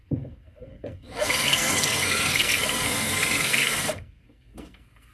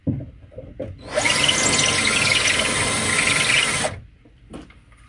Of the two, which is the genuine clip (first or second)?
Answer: second